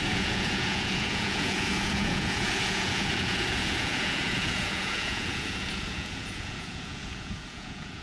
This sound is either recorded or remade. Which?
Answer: remade